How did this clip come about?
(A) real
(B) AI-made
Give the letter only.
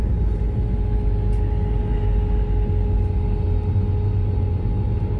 A